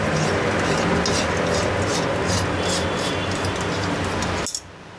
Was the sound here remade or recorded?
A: recorded